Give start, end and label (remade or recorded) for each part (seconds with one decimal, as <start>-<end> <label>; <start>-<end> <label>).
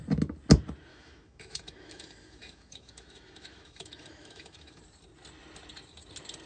0.0-0.9 recorded; 0.9-4.8 remade; 4.8-6.5 recorded